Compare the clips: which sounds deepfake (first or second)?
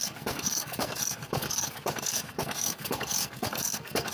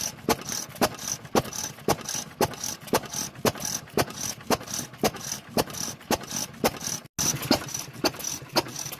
first